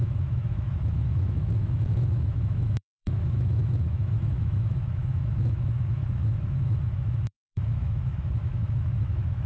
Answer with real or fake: fake